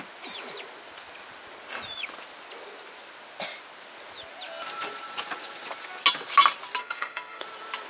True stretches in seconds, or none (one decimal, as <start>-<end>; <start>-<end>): 0.0-6.8; 7.4-7.9